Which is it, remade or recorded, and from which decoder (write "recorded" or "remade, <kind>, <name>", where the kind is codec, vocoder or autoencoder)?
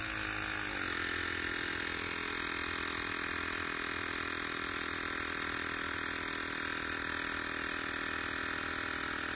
recorded